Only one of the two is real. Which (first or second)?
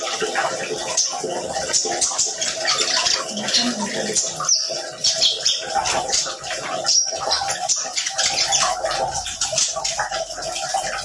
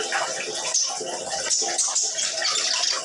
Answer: second